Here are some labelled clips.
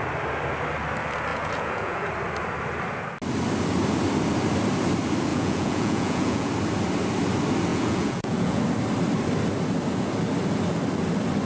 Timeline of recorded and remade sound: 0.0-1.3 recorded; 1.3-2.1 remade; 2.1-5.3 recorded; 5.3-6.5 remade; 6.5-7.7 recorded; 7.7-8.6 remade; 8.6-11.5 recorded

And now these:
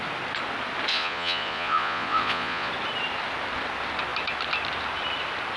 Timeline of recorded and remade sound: 0.0-0.9 recorded; 0.9-2.7 remade; 2.7-5.6 recorded

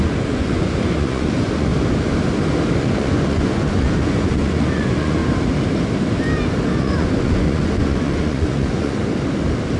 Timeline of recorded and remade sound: 0.0-1.7 remade; 1.7-2.8 recorded; 2.8-5.2 remade; 5.2-6.8 recorded; 6.8-9.0 remade; 9.0-9.8 recorded

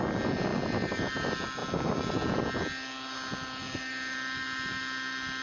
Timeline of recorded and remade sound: 0.0-5.4 recorded